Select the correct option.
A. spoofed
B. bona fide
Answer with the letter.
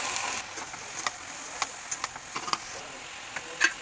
B